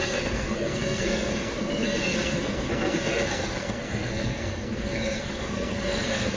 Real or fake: fake